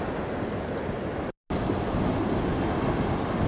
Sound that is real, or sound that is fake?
real